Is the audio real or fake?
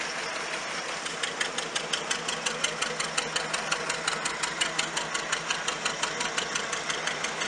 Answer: real